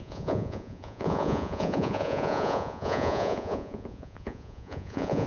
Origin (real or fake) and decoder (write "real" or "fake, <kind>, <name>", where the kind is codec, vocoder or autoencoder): fake, vocoder, Vocos